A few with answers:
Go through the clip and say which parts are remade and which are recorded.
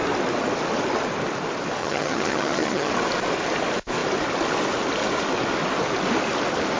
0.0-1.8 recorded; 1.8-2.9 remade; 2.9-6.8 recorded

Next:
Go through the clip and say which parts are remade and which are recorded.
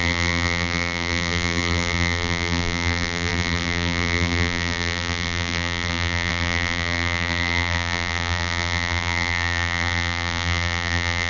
0.0-11.3 remade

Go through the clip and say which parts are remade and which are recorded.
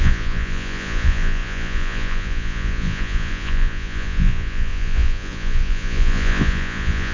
0.0-7.1 remade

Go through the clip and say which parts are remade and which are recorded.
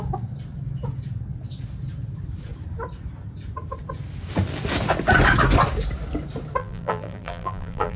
0.0-6.6 recorded; 6.6-8.0 remade